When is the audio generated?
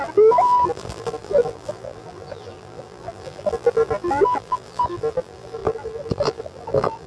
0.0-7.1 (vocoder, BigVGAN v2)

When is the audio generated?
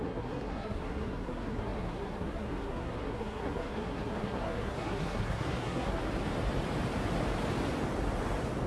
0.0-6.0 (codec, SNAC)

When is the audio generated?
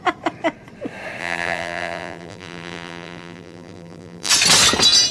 1.2-4.3 (vocoder, BigVGAN v2)